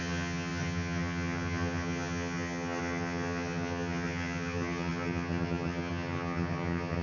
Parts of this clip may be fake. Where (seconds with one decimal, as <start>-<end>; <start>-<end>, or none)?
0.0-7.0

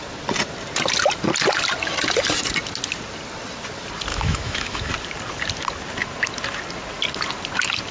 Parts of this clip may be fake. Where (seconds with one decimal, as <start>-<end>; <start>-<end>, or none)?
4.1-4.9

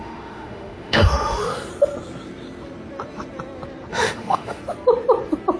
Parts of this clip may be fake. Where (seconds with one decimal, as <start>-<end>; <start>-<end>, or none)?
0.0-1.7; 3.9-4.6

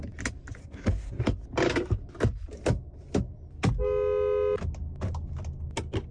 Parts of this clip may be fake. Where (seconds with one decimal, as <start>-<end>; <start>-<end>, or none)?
0.6-1.2

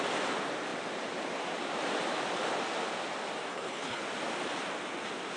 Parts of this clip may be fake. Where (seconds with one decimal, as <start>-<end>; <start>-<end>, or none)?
3.5-4.0

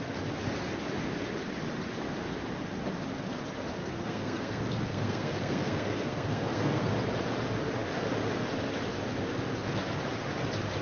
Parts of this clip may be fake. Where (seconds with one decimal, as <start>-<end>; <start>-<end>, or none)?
3.8-6.9